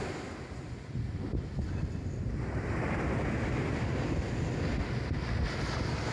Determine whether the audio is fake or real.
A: real